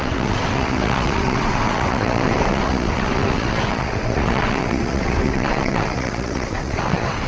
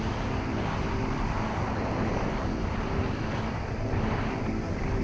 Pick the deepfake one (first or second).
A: first